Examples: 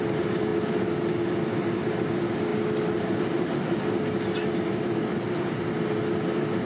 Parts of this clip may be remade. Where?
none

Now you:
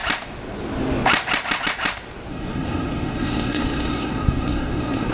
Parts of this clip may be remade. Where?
2.3-5.1 (codec, SNAC)

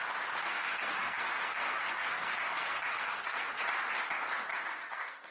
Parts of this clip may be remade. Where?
0.4-3.6 (codec, SNAC); 4.5-5.3

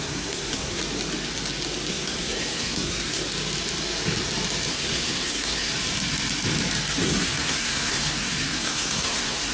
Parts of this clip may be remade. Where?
0.0-0.8 (codec, SNAC); 1.9-3.2; 4.7-5.7; 7.0-9.5

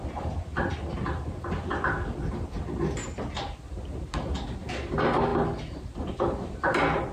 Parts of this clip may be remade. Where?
none